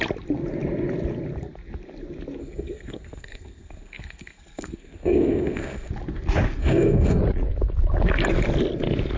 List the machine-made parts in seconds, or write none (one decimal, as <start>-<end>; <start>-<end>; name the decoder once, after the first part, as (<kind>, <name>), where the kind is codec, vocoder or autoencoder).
2.4-5.9 (codec, SNAC); 6.6-7.2